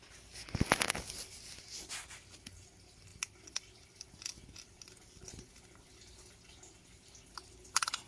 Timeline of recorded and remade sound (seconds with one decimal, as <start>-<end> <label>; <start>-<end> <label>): 0.0-8.1 recorded